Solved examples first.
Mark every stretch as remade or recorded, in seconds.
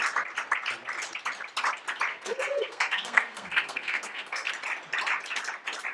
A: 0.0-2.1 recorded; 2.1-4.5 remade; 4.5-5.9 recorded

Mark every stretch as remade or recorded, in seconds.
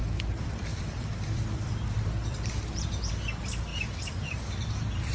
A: 0.0-3.1 remade; 3.1-3.7 recorded; 3.7-5.1 remade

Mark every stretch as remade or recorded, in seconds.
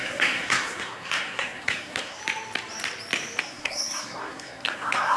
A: 0.0-2.2 remade; 2.2-3.4 recorded; 3.4-5.2 remade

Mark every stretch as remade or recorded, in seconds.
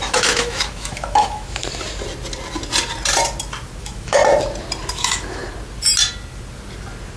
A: 0.0-1.6 remade; 1.6-3.8 recorded; 3.8-4.2 remade; 4.2-4.9 recorded; 4.9-5.4 remade; 5.4-7.2 recorded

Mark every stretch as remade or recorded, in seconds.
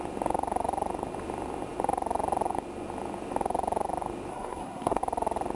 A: 0.0-4.3 recorded; 4.3-5.0 remade; 5.0-5.6 recorded